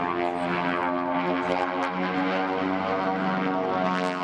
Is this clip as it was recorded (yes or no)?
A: yes